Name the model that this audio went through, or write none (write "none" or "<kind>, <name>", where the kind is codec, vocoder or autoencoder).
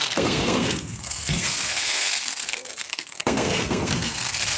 codec, SNAC